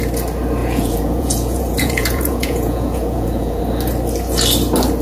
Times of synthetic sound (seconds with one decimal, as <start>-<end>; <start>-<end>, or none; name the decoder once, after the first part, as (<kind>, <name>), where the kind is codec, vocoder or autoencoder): 0.6-3.6 (vocoder, Vocos)